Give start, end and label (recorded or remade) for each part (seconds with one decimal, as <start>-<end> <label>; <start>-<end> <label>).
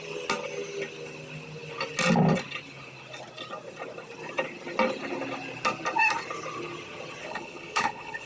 0.0-7.2 recorded; 7.2-8.3 remade